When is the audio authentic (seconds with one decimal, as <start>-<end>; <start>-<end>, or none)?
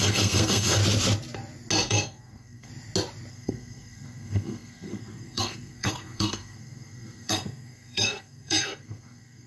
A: 0.8-1.9; 2.7-3.3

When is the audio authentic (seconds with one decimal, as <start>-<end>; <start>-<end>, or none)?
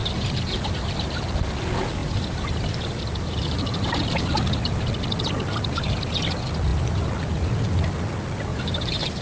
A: 1.3-2.0; 3.9-8.5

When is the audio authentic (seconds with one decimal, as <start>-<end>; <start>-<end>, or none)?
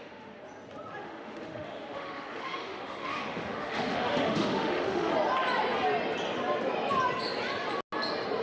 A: 0.4-1.0; 5.1-8.4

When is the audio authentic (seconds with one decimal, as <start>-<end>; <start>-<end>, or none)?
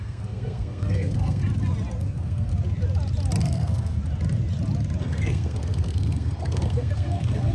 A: 1.4-2.0; 2.5-3.4; 4.0-5.0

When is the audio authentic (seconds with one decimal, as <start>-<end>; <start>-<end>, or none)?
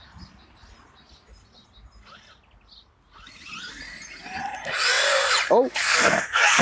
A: 0.0-5.7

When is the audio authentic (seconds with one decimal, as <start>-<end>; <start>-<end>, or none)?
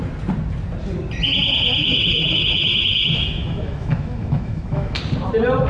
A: 0.0-1.8; 5.0-5.7